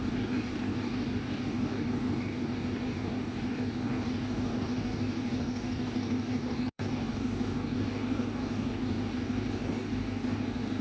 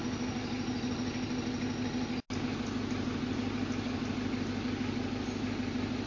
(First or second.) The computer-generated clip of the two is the first